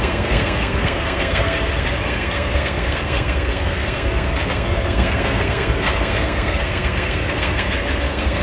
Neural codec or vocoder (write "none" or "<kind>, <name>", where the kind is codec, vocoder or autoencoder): codec, SNAC